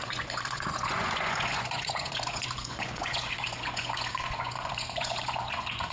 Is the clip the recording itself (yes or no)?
no